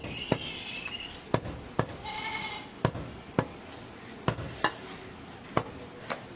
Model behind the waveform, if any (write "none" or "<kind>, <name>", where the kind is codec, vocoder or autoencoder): none